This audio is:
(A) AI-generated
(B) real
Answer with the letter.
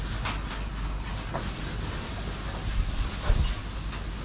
B